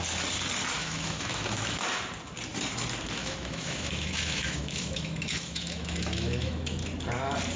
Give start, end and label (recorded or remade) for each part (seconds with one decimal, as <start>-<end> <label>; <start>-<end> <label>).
0.0-0.8 recorded; 0.8-1.8 remade; 1.8-3.2 recorded; 3.2-6.8 remade; 6.8-7.6 recorded